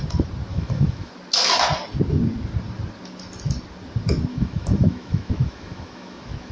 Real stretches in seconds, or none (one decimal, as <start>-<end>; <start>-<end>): 0.0-0.5; 1.1-4.3